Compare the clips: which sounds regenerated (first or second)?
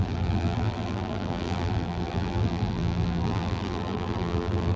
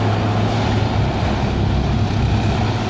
first